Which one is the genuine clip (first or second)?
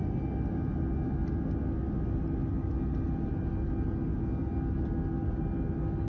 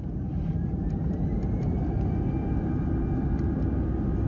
first